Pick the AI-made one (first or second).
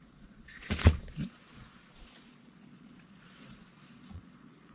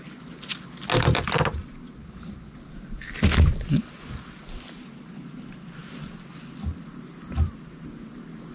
first